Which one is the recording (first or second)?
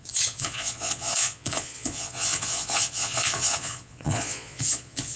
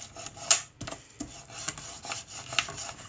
second